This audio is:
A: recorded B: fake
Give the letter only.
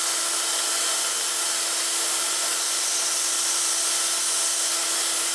A